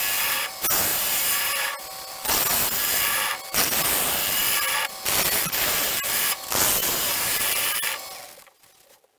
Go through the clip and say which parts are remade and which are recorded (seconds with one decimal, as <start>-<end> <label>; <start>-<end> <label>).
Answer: 0.0-0.9 recorded; 0.9-1.7 remade; 1.7-6.8 recorded; 6.8-7.4 remade; 7.4-9.2 recorded